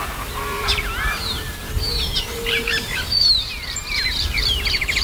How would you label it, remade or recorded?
remade